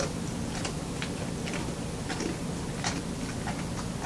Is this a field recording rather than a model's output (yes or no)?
yes